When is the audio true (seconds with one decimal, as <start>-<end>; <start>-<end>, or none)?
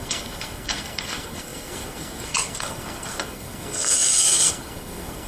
none